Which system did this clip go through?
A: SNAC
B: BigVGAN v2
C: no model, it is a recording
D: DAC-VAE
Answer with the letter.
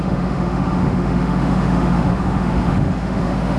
D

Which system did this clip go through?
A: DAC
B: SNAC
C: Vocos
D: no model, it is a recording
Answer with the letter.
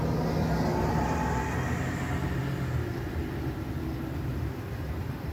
D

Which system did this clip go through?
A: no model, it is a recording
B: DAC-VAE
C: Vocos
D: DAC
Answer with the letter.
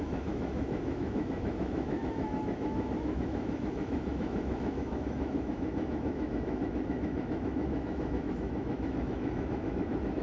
B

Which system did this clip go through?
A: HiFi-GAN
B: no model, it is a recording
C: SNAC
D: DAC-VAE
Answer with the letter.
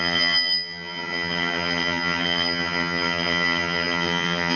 A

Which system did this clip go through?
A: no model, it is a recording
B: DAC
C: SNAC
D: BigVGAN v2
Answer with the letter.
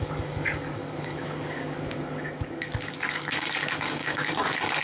B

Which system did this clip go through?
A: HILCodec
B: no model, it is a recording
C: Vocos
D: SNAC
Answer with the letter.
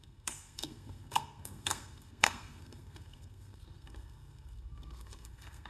D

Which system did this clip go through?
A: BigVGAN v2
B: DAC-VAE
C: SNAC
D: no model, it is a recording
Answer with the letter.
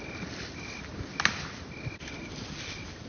D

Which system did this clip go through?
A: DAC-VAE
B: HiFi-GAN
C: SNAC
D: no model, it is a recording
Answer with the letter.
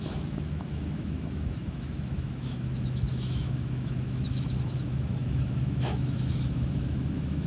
A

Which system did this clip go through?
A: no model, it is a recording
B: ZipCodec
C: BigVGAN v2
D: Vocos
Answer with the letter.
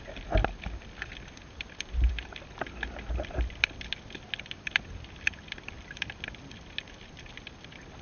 C